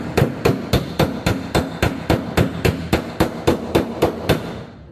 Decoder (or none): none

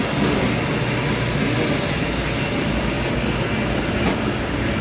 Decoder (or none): none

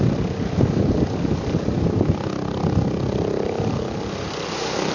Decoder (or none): none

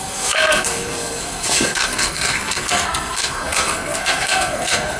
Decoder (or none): codec, SNAC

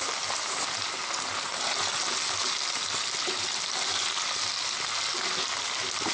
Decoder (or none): none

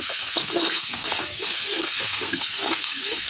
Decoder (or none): codec, SNAC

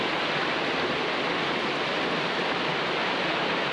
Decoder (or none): none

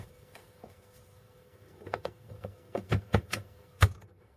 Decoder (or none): codec, SNAC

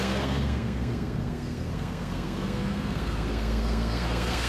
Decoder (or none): codec, SNAC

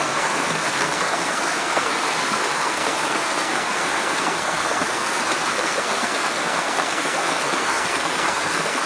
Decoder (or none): codec, SNAC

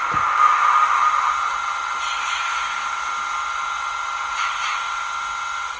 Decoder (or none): none